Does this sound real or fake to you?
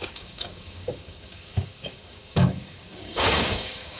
fake